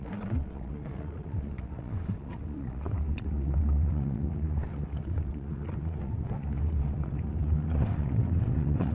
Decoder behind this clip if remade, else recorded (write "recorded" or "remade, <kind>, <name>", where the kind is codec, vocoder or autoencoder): remade, vocoder, WaveNeXt